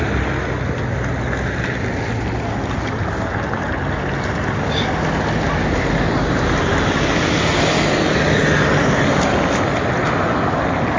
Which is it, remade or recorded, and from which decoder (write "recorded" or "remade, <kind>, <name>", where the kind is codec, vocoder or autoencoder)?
recorded